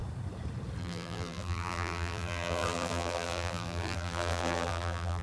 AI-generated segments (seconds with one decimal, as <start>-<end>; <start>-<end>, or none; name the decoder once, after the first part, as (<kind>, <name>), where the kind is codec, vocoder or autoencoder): 0.8-5.2 (vocoder, BigVGAN v2)